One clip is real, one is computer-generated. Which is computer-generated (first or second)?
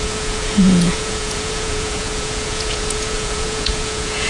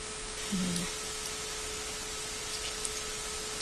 first